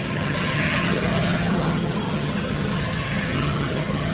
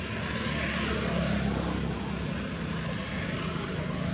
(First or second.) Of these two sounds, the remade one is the first